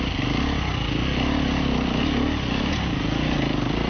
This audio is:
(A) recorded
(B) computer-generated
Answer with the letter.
A